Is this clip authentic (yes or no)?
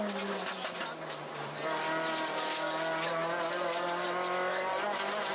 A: yes